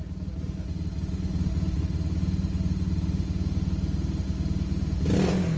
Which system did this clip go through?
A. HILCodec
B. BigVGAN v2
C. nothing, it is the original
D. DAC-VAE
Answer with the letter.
C